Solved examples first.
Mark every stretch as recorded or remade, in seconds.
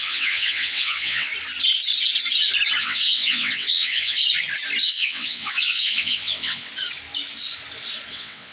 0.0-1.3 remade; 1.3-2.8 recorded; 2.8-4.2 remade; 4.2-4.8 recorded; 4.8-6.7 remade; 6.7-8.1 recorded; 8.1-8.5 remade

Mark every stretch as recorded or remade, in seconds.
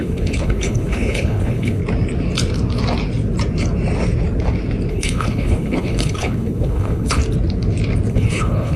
0.0-1.8 remade; 1.8-4.9 recorded; 4.9-7.2 remade; 7.2-8.1 recorded; 8.1-8.8 remade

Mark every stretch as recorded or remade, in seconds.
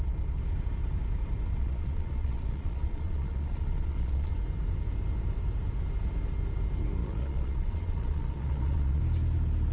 0.0-1.6 recorded; 1.6-4.3 remade; 4.3-7.0 recorded; 7.0-9.0 remade; 9.0-9.7 recorded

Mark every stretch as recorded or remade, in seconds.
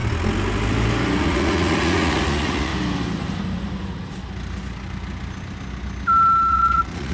0.0-1.2 recorded; 1.2-2.7 remade; 2.7-6.5 recorded; 6.5-7.1 remade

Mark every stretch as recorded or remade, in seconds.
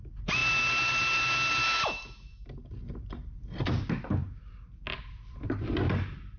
0.0-6.4 recorded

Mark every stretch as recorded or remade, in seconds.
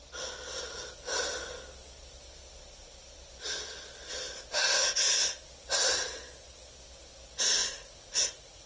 0.0-7.6 recorded; 7.6-8.7 remade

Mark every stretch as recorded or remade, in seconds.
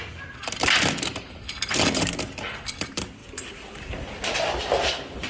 0.0-5.3 remade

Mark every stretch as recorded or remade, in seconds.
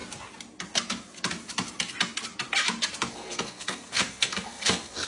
0.0-3.1 recorded; 3.1-5.1 remade